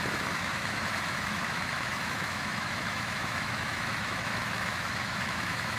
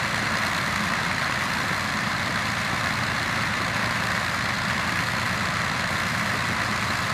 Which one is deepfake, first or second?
first